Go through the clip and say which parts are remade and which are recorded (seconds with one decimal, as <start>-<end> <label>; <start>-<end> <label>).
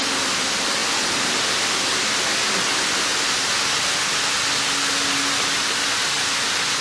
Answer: 0.0-6.8 recorded